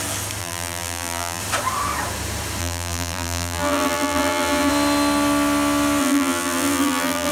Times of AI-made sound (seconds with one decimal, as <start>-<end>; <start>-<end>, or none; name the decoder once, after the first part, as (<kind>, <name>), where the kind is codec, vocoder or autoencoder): 0.4-1.4 (vocoder, BigVGAN v2); 2.6-4.7; 6.0-7.3